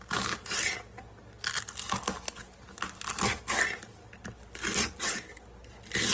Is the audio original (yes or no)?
yes